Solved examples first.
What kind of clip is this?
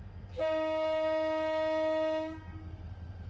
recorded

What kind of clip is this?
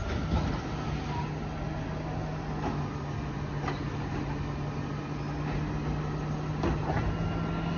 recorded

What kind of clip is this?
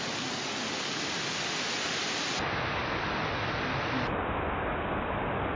recorded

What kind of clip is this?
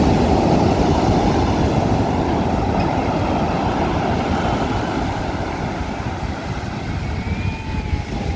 recorded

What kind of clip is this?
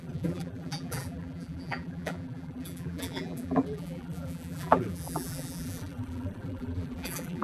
remade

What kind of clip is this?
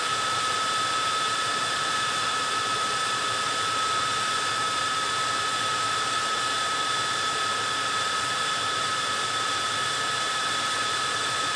remade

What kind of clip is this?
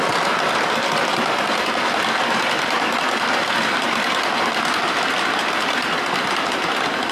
remade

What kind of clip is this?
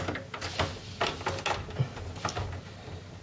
recorded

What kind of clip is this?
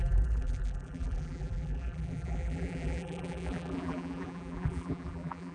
remade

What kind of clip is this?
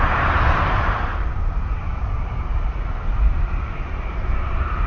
remade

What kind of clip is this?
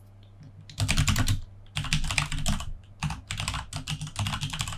recorded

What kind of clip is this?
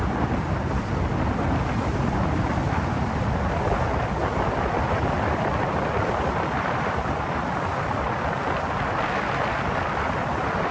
remade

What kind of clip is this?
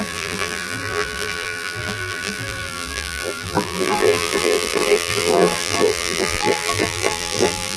remade